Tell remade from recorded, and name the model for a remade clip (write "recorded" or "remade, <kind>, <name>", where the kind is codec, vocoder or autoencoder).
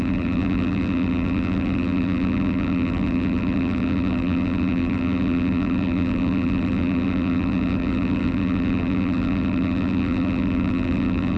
remade, vocoder, BigVGAN v2